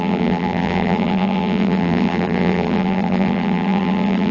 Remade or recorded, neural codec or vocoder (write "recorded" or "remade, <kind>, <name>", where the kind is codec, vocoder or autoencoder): remade, vocoder, BigVGAN v2